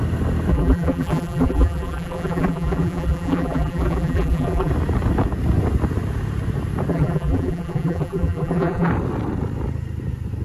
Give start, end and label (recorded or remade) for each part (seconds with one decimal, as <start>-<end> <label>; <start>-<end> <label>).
0.0-0.5 recorded; 0.5-4.7 remade; 4.7-6.9 recorded; 6.9-8.9 remade; 8.9-10.4 recorded